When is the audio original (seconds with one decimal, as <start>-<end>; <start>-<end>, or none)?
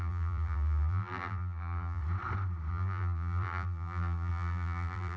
2.0-2.7